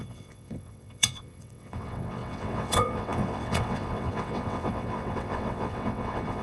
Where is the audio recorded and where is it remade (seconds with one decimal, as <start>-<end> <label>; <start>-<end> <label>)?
0.0-6.4 remade